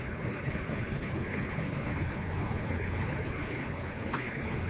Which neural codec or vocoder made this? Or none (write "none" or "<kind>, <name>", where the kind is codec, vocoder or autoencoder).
codec, HILCodec